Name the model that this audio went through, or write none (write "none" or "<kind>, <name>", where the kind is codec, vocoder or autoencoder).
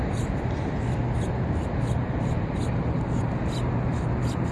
none